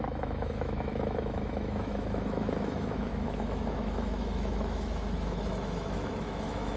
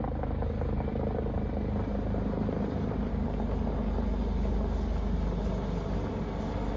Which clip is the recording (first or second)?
second